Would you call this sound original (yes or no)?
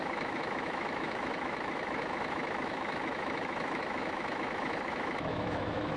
no